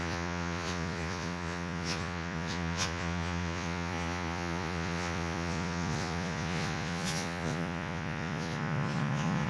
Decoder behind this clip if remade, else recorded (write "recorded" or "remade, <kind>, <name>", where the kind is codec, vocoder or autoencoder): remade, vocoder, Vocos